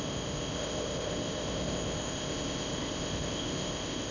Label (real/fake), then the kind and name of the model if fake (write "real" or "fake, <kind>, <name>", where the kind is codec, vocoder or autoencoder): fake, codec, ZipCodec